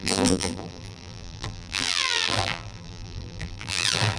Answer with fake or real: fake